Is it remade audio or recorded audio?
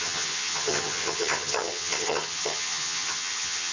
remade